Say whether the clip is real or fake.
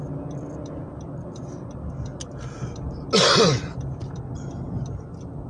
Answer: real